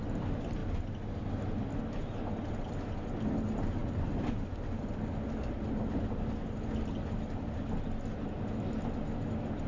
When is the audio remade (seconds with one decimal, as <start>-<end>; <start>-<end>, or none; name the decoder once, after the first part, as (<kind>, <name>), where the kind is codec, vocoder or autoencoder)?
none